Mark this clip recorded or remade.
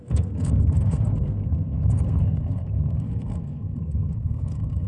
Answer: remade